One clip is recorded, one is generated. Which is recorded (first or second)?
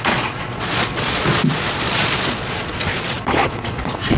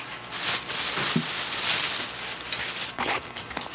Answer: second